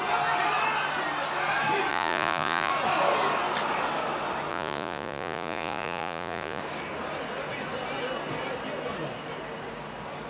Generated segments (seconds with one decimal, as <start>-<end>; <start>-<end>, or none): 1.9-2.7; 4.5-6.6